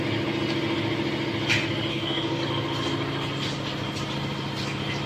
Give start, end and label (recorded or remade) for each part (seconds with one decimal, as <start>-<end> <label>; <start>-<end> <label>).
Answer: 0.0-1.9 recorded; 1.9-2.4 remade; 2.4-5.1 recorded